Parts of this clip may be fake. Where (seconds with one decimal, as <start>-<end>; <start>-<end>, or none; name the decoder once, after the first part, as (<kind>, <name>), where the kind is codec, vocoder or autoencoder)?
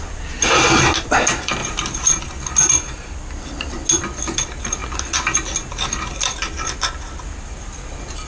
1.6-2.2 (vocoder, BigVGAN v2)